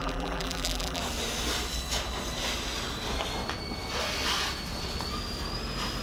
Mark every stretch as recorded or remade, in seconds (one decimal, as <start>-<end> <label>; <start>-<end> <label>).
0.0-1.0 remade; 1.0-6.0 recorded